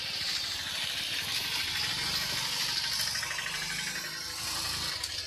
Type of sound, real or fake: real